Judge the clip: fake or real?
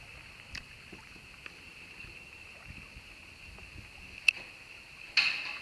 real